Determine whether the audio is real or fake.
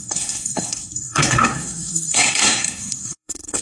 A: fake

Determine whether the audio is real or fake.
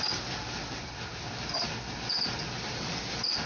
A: real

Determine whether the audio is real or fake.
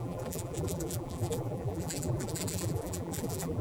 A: fake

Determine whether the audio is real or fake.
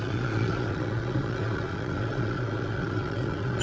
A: fake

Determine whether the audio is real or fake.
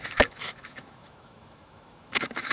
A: fake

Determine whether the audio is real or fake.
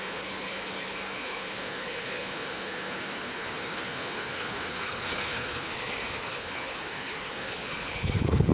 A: fake